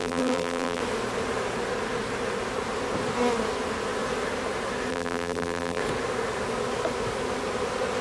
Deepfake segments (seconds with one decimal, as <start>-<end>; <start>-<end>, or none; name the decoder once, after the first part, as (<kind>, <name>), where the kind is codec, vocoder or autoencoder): 0.0-0.8 (vocoder, BigVGAN v2); 4.9-5.8